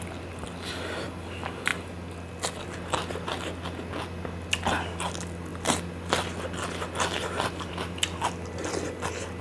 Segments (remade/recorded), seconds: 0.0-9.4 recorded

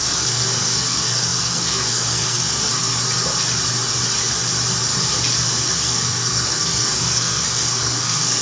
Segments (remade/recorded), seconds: 0.0-2.9 remade; 2.9-5.7 recorded; 5.7-8.4 remade

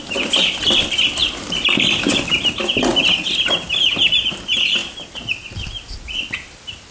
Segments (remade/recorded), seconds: 0.0-6.9 recorded

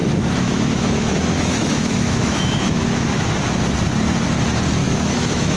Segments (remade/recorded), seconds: 0.0-3.4 remade; 3.4-4.8 recorded; 4.8-5.6 remade

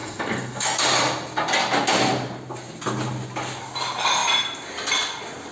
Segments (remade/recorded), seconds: 0.0-0.8 remade; 0.8-5.5 recorded

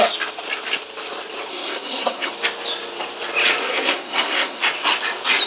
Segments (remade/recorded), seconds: 0.0-1.5 recorded; 1.5-2.3 remade; 2.3-3.6 recorded; 3.6-4.6 remade; 4.6-5.5 recorded

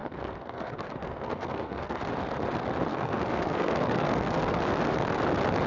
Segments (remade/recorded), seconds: 0.0-2.0 remade; 2.0-2.9 recorded; 2.9-4.6 remade; 4.6-5.7 recorded

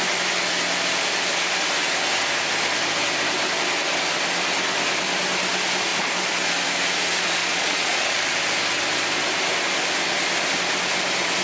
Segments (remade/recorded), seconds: 0.0-7.4 recorded; 7.4-8.2 remade; 8.2-11.4 recorded